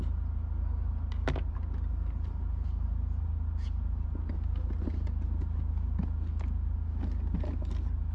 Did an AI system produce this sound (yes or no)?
no